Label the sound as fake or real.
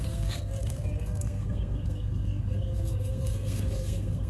fake